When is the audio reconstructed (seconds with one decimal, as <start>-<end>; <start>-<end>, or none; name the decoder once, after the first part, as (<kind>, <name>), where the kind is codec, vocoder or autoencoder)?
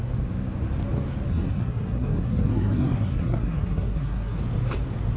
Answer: 1.3-4.4 (codec, SNAC)